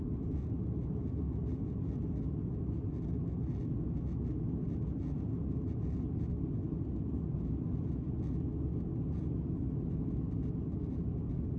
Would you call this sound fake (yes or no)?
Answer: no